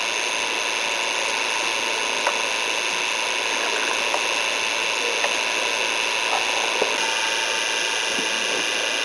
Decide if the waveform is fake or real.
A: real